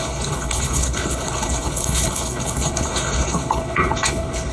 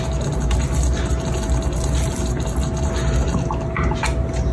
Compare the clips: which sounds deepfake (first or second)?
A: first